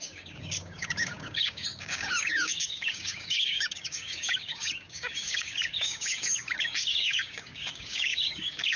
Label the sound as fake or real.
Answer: fake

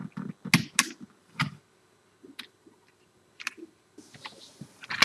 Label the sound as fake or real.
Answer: real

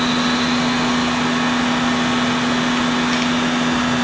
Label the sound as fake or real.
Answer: real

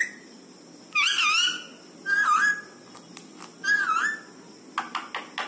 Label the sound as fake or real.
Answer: real